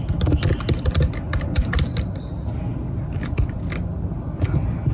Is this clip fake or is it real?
real